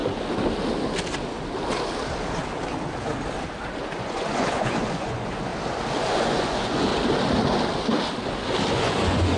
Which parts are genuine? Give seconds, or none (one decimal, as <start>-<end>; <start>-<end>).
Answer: 0.0-4.0; 5.5-6.0; 6.9-8.7